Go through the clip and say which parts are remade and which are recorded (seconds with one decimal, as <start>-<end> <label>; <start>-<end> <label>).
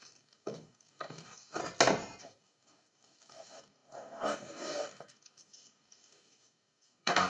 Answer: 0.0-1.6 remade; 1.6-2.2 recorded; 2.2-7.3 remade